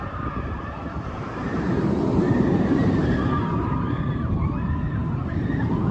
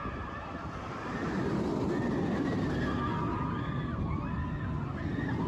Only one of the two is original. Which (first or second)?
second